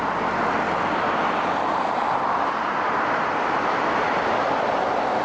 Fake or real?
real